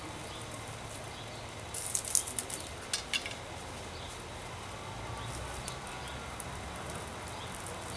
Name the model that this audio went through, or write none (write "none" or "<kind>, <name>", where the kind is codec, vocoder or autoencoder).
none